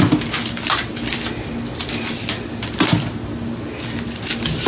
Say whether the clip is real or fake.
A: real